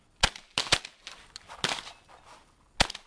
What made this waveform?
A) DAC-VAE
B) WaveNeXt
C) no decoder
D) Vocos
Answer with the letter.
C